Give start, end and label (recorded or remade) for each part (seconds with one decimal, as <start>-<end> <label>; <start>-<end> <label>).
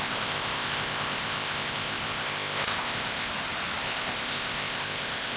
0.0-3.3 remade; 3.3-3.8 recorded; 3.8-5.4 remade